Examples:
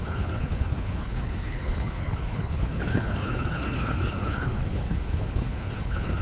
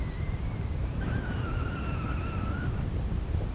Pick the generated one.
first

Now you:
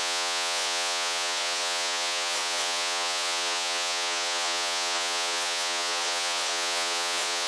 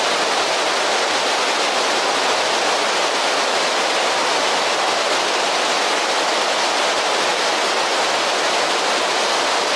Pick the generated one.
first